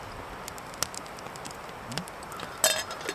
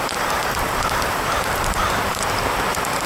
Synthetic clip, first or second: second